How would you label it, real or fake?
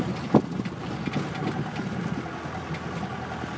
real